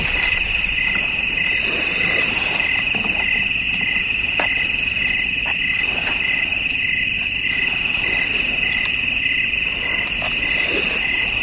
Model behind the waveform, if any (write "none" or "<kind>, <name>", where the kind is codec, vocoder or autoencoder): none